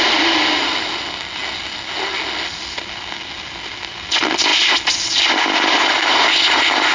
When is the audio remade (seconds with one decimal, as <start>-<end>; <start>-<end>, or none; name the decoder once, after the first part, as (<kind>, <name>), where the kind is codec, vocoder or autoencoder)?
none